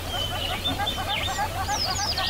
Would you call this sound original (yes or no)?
no